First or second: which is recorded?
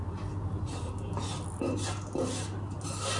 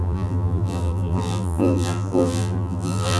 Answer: first